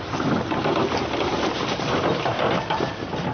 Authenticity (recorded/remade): remade